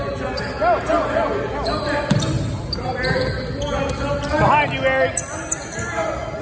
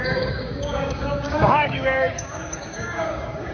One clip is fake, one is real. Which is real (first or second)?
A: first